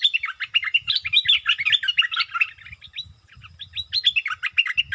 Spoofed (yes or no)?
no